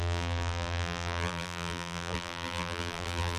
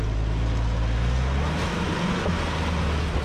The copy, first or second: first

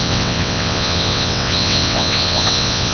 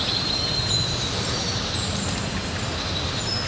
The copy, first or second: first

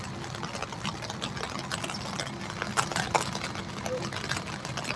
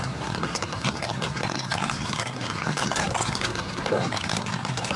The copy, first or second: second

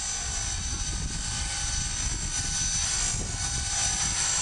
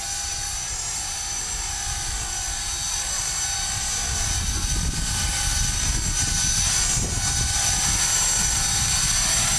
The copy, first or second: second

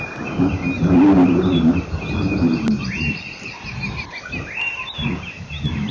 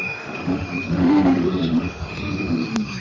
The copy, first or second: second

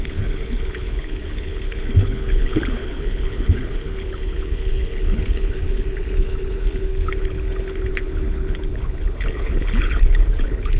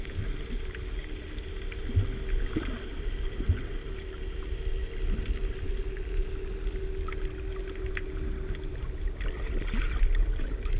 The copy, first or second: first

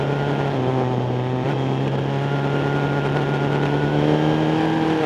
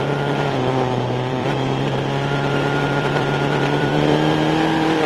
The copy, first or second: second